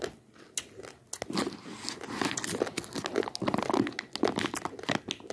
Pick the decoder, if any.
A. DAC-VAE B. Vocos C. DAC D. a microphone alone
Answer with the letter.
D